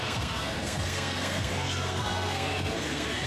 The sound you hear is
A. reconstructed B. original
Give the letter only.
A